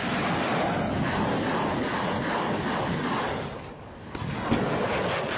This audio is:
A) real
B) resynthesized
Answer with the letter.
A